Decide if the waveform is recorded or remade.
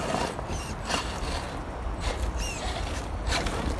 recorded